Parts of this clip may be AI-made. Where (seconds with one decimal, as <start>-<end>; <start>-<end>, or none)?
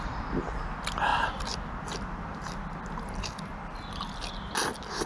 1.1-4.2